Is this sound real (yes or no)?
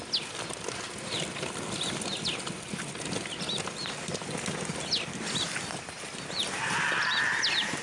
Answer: yes